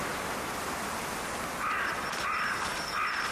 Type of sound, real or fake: fake